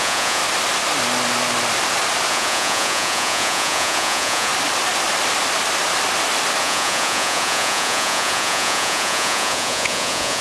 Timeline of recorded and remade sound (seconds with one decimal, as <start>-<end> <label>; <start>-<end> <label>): 0.0-0.4 remade; 0.4-2.3 recorded; 2.3-4.5 remade; 4.5-6.6 recorded; 6.6-10.4 remade